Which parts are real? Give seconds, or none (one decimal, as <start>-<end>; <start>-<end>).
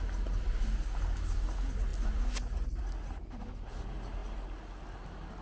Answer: 0.0-5.4